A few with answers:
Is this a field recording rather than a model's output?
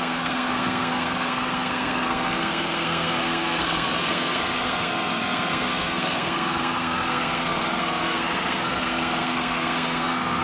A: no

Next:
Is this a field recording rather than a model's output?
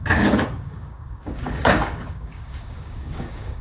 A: no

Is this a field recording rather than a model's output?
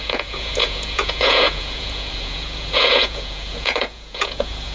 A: no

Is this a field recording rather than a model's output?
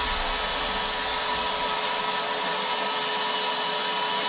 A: yes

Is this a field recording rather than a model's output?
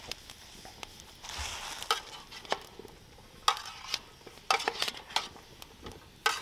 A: yes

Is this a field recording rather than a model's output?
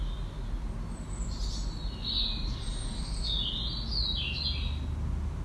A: yes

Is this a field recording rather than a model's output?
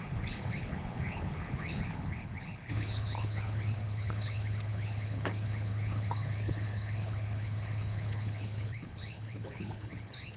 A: no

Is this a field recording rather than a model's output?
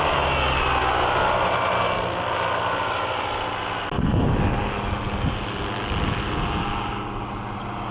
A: yes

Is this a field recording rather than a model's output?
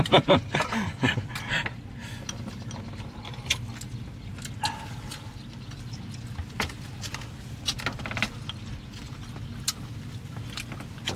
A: yes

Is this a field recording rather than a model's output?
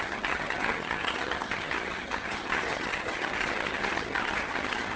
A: no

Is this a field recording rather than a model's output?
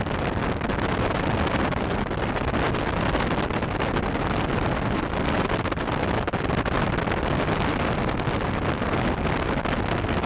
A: yes